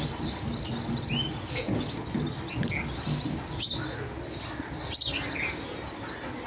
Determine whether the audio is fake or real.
real